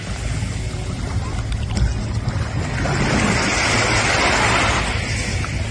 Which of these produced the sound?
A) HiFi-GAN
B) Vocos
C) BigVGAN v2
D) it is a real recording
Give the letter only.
D